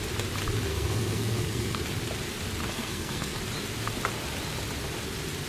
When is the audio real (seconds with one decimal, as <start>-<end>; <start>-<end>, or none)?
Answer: 0.0-0.7; 1.8-2.6; 3.4-5.5